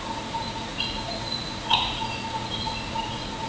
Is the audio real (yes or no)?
no